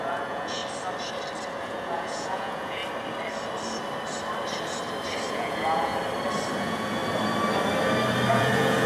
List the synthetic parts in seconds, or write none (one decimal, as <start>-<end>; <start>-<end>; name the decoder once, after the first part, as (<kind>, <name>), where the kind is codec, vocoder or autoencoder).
0.0-0.6 (vocoder, Vocos); 1.6-2.8; 5.3-5.9; 6.6-7.0; 8.3-8.9